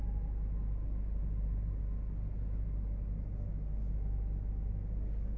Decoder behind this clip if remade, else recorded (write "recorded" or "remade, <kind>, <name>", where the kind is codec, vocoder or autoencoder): recorded